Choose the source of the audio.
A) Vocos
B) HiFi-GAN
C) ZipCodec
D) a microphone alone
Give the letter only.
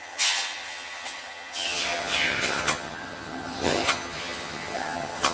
B